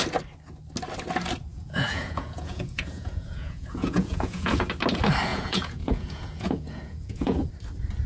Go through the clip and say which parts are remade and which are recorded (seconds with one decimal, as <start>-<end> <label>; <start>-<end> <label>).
0.0-1.5 recorded; 1.5-4.7 remade; 4.7-5.3 recorded; 5.3-7.5 remade; 7.5-8.1 recorded